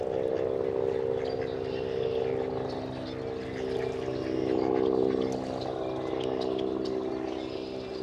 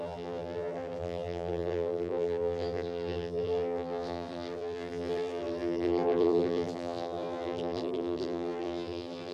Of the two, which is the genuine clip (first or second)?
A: first